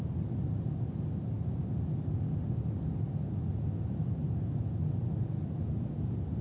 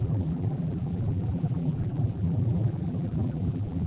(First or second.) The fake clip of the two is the second